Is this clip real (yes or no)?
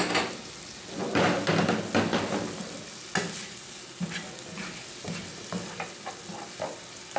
yes